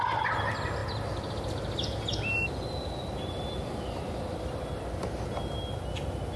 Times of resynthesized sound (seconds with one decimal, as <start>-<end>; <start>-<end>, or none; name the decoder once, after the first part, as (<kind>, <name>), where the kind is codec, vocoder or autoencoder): none